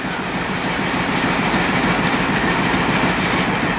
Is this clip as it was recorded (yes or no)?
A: yes